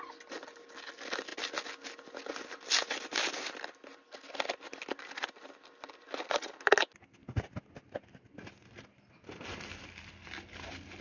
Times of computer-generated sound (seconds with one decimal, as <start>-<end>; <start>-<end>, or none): none